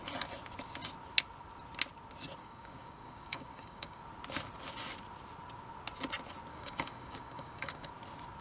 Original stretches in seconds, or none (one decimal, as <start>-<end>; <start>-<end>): 0.0-2.4; 4.0-6.5; 7.9-8.4